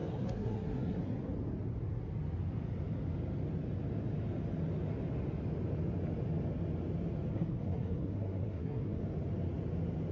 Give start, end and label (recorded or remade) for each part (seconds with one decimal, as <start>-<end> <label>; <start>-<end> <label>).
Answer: 0.0-1.0 remade; 1.0-7.3 recorded; 7.3-9.0 remade; 9.0-10.1 recorded